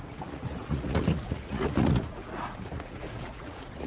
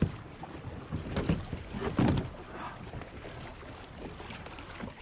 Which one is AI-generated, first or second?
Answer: first